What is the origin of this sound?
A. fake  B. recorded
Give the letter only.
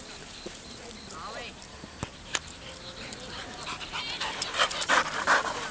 A